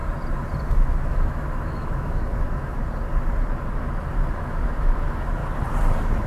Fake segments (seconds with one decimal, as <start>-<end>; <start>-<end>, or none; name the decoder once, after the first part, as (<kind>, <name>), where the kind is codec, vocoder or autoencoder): 0.7-2.8 (autoencoder, DAC-VAE); 4.4-5.4